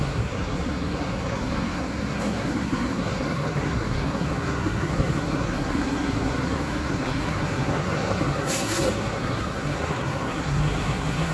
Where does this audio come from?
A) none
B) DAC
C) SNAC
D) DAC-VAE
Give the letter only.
C